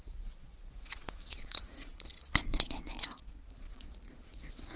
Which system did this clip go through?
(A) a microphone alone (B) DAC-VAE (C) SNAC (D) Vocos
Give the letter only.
D